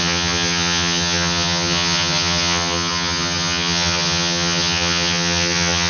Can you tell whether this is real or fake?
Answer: fake